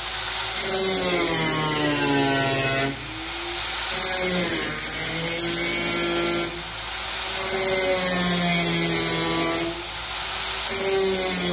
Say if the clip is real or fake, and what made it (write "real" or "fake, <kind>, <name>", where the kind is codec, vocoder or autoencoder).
real